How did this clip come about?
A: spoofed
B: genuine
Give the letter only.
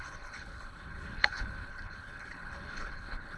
A